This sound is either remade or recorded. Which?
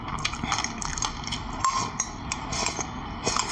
recorded